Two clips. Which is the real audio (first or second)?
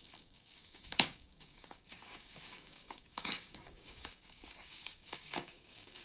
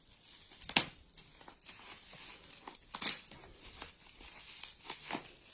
second